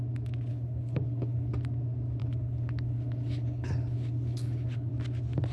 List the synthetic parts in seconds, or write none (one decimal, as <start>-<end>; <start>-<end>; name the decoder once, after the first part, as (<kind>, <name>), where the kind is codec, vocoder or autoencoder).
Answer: 0.5-1.5 (codec, HILCodec); 2.2-4.9